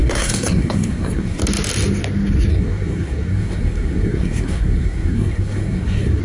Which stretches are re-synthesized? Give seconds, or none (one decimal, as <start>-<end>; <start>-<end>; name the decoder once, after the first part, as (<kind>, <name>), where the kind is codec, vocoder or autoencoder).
0.0-1.4 (codec, SNAC); 2.5-6.2